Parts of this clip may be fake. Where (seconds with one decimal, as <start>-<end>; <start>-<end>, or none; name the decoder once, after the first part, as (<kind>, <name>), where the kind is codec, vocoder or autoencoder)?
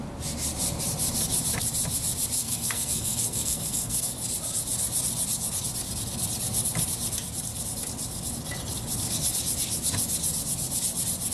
2.4-4.1 (codec, SNAC)